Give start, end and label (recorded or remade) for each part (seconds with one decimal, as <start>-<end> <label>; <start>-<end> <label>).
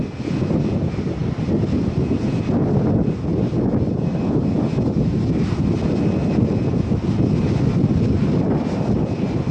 0.0-9.5 recorded